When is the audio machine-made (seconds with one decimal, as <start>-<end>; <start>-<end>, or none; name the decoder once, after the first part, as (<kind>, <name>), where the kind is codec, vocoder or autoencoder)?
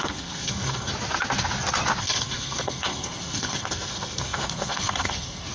0.0-0.9 (codec, SNAC); 2.0-5.5